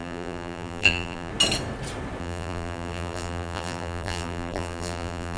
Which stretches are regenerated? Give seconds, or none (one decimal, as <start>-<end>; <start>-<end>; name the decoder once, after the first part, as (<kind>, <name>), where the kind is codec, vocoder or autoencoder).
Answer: 0.0-1.3 (vocoder, BigVGAN v2); 2.2-5.4